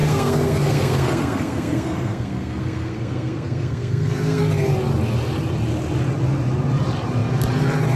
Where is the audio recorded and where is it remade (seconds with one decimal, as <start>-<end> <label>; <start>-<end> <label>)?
0.0-4.4 remade; 4.4-8.0 recorded